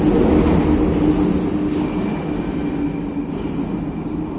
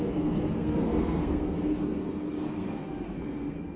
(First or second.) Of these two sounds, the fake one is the second